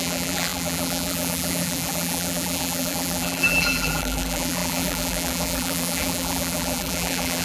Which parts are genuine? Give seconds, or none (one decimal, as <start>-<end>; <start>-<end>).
none